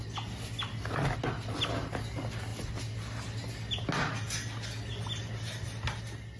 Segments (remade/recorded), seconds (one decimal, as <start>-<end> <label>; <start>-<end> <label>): 0.0-6.4 recorded